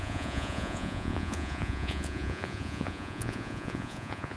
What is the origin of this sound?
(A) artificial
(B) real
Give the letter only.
A